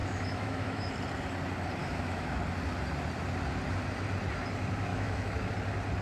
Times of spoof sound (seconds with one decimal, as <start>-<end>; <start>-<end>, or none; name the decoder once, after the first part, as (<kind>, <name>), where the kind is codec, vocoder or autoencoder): 0.0-0.9 (autoencoder, DAC-VAE); 1.8-2.4; 4.9-5.5